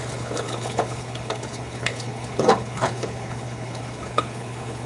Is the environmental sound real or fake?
fake